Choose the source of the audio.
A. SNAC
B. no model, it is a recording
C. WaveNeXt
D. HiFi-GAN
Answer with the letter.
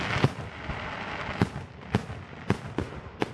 B